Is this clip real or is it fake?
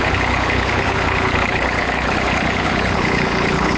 fake